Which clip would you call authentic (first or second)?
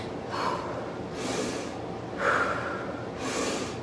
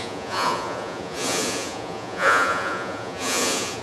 first